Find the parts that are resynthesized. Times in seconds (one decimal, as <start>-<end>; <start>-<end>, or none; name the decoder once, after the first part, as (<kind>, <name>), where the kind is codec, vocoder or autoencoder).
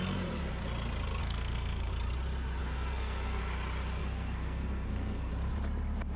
1.2-1.9 (codec, SNAC); 2.6-3.4; 4.0-5.3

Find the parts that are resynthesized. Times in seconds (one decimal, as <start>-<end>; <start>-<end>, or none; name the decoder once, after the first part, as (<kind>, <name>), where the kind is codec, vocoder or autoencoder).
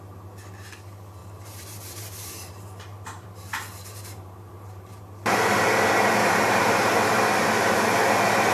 1.2-5.0 (vocoder, BigVGAN v2); 6.2-6.9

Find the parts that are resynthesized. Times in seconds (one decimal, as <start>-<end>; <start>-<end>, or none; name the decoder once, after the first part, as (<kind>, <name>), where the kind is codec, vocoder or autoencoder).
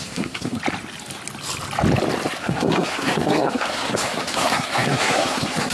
0.0-0.6 (codec, SNAC); 2.4-5.7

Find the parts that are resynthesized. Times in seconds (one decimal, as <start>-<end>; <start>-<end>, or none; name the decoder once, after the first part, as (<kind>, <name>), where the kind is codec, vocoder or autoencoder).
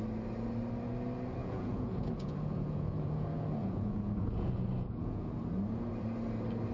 1.4-5.4 (vocoder, Vocos)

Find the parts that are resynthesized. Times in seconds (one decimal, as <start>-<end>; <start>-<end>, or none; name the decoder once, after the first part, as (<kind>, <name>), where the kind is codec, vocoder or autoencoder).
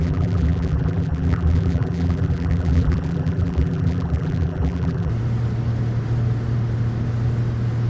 0.0-5.1 (vocoder, BigVGAN v2)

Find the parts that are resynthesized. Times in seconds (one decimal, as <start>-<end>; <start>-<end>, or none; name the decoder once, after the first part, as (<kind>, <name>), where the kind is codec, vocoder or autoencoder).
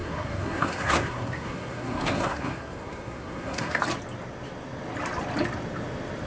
0.0-3.8 (codec, SNAC)